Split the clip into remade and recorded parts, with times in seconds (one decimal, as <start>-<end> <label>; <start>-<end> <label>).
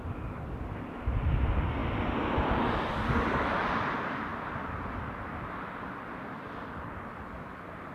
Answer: 0.0-7.9 recorded